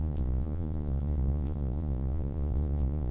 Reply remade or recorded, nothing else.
remade